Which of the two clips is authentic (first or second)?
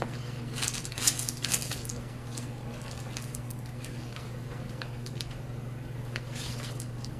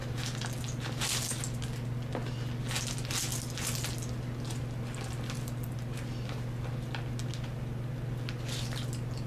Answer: second